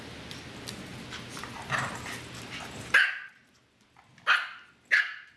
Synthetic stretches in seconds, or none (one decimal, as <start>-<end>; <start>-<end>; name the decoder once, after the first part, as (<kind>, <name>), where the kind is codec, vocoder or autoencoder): none